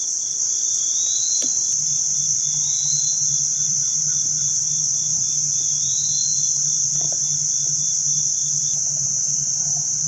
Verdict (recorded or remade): remade